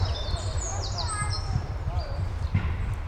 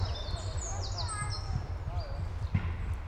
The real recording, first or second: second